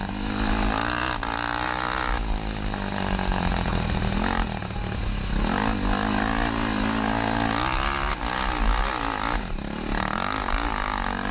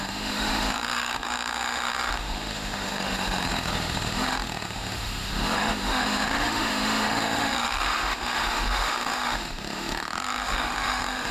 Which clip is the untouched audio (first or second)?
first